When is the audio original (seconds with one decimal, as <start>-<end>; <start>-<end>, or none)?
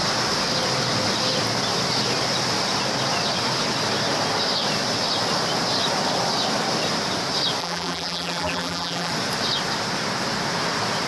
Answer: 0.0-7.6; 9.1-11.1